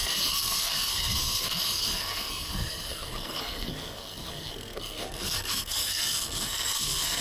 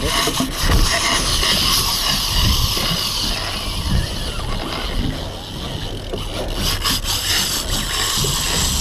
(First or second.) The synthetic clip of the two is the first